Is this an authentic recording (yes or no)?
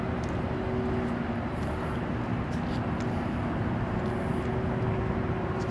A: yes